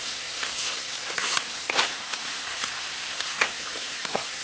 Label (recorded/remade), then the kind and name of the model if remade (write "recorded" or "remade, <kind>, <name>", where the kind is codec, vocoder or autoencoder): remade, codec, SNAC